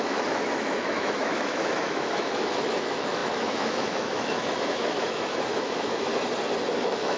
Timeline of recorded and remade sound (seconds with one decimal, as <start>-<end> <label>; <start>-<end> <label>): 0.0-6.1 remade; 6.1-6.7 recorded; 6.7-7.2 remade